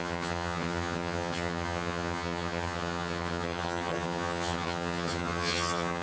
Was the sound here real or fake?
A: fake